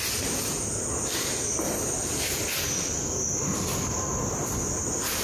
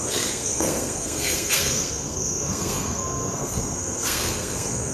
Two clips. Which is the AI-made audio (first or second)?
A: second